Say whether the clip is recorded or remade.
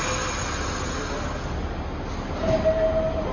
recorded